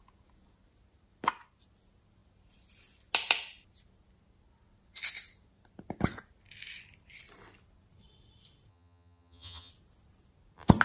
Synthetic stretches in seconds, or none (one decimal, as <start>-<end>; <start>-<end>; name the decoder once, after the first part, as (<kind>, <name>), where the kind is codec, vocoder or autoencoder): 8.7-9.7 (vocoder, HiFi-GAN)